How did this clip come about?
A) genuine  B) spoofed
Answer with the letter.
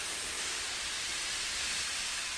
A